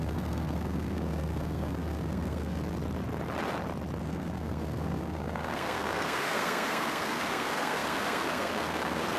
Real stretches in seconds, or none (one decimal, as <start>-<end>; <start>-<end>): 2.6-4.0